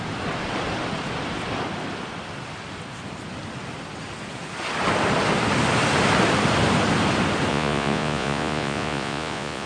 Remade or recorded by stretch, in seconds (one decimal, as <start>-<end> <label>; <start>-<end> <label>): 0.0-7.5 recorded; 7.5-9.7 remade